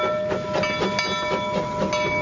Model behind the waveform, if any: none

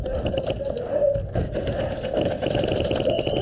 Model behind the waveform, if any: none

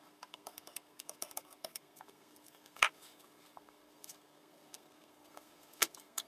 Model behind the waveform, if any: codec, SNAC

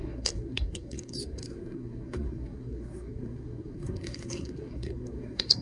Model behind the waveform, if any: codec, SNAC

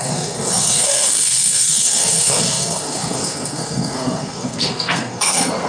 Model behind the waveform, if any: codec, SNAC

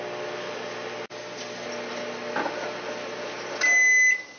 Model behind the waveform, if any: none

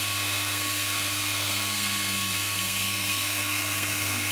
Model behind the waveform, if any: codec, SNAC